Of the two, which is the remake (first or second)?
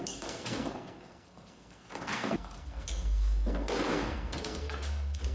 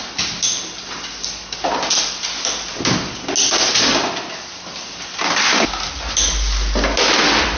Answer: first